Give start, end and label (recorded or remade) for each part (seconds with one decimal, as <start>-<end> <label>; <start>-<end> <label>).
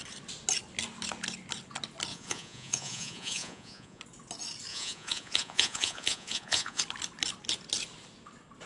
0.0-2.1 recorded; 2.1-4.0 remade; 4.0-4.7 recorded; 4.7-6.8 remade; 6.8-8.7 recorded